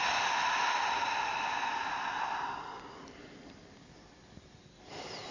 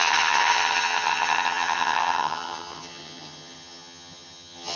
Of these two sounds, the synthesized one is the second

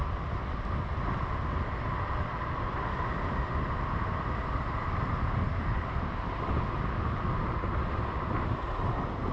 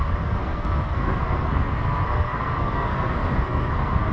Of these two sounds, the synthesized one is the second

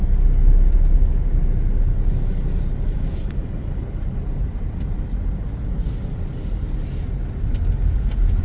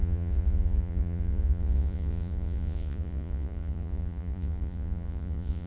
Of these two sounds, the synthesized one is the second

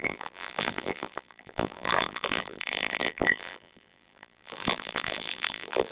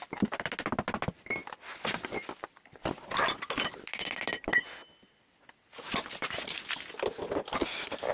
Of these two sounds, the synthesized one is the first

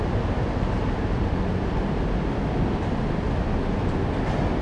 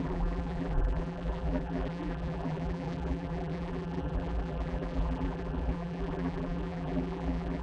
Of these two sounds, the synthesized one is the second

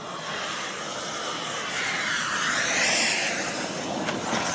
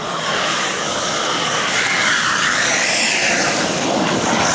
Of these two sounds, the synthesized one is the second